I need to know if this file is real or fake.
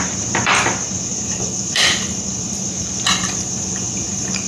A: fake